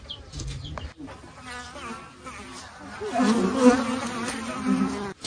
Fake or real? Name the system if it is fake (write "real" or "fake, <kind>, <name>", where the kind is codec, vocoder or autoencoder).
real